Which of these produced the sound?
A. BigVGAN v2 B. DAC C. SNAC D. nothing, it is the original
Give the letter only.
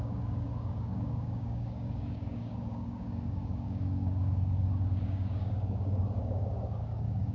B